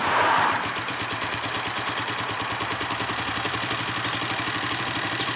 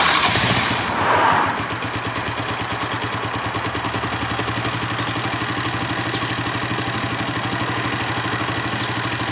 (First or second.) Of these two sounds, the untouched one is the second